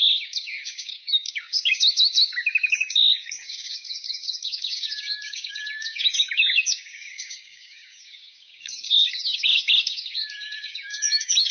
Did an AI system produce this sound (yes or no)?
yes